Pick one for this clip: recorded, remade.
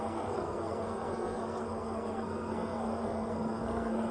remade